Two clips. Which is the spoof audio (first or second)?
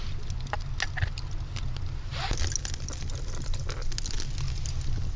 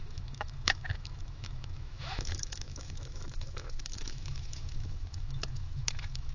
second